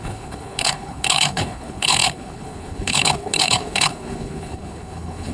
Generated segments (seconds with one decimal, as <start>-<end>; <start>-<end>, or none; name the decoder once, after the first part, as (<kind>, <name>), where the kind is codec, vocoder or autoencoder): 0.0-5.3 (codec, HILCodec)